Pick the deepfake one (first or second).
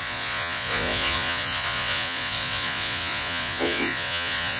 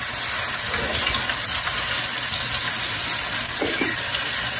first